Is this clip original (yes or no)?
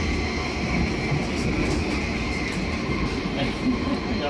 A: yes